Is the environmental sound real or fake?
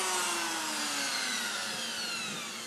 real